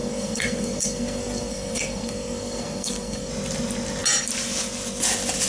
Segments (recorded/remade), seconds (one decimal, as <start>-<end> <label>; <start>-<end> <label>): 0.0-3.3 remade; 3.3-5.5 recorded